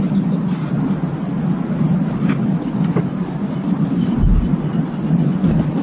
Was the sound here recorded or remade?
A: recorded